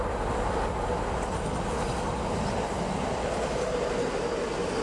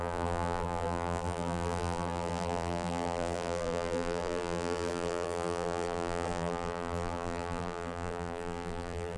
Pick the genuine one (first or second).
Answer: first